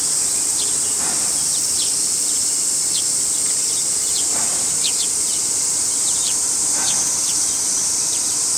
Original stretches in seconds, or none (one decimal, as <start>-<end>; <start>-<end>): none